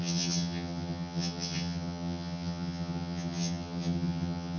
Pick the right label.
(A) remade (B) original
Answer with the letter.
A